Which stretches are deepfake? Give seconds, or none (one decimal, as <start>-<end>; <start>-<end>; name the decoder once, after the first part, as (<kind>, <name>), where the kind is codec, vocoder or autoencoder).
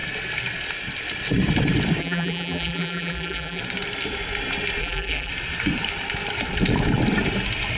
2.0-3.6 (vocoder, BigVGAN v2); 4.8-5.3